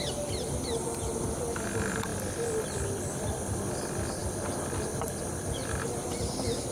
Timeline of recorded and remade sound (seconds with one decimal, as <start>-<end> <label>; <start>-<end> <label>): 0.0-6.7 recorded